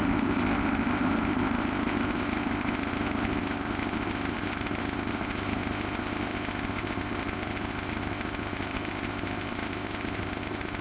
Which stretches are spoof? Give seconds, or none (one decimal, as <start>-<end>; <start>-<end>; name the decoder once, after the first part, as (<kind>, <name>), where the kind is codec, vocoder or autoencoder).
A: 0.0-10.8 (codec, ZipCodec)